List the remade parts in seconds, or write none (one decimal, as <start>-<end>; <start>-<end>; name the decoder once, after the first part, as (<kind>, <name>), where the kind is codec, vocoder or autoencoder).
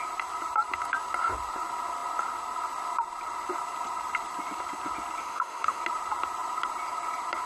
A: 5.2-5.8 (autoencoder, DAC-VAE)